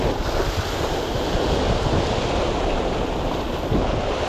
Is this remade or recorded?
recorded